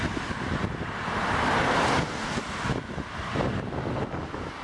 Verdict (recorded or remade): recorded